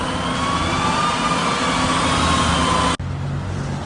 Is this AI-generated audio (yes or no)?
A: no